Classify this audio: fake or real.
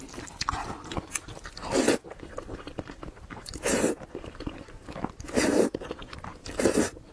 real